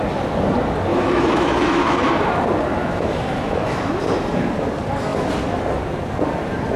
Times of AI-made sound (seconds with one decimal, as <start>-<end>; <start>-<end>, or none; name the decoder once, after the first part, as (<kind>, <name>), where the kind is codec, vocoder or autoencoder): 0.9-2.1 (autoencoder, DAC-VAE); 2.8-3.9